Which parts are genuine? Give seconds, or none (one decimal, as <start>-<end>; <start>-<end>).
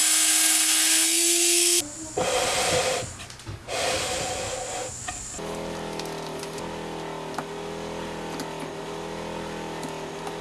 1.8-10.4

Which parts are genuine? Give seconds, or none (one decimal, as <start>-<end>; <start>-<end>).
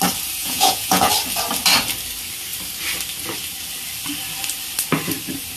0.0-0.4; 1.1-5.6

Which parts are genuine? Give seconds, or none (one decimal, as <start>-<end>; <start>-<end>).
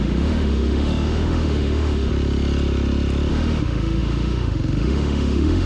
2.1-3.3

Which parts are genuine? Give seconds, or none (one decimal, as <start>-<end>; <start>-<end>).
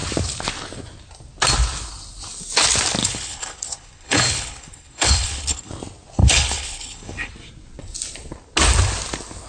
0.0-3.0; 5.7-6.2; 7.3-9.5